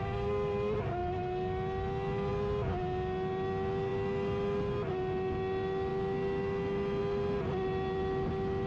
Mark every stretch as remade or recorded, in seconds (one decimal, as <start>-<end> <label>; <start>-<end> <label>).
0.0-8.7 recorded